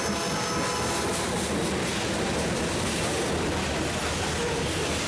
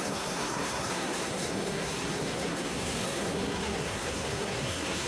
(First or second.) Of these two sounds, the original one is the first